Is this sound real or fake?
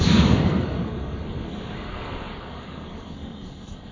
fake